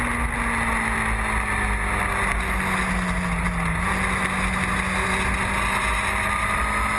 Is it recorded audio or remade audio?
recorded